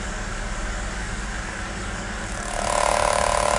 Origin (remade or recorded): remade